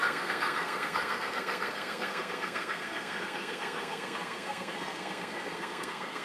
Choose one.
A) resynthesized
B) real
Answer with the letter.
A